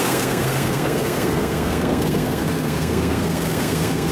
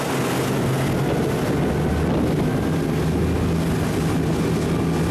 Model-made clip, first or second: first